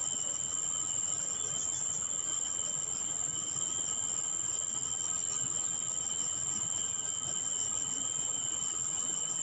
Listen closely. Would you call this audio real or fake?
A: real